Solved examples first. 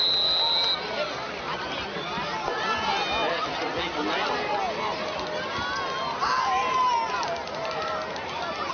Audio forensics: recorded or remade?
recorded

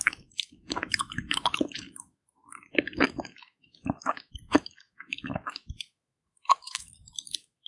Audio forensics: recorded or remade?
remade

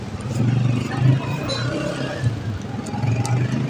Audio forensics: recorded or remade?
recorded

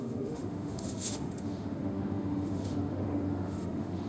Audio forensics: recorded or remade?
remade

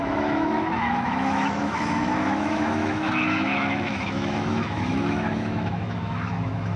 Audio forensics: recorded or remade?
remade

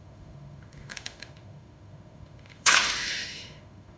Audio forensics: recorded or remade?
remade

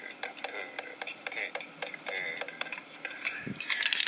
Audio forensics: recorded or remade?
recorded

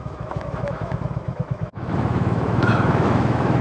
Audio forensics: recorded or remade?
remade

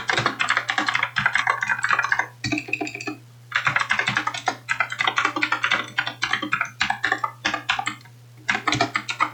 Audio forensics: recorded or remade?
recorded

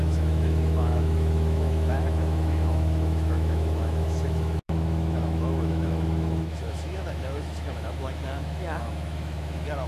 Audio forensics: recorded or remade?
remade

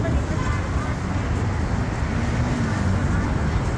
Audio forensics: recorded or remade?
recorded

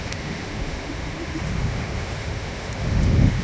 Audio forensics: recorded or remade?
remade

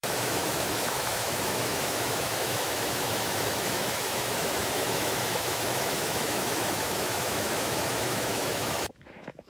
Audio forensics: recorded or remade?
remade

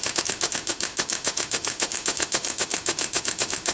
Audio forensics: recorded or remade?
remade